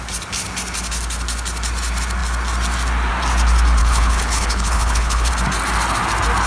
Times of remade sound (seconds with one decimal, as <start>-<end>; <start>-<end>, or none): 3.8-5.3